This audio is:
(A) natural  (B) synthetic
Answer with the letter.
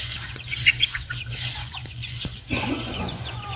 B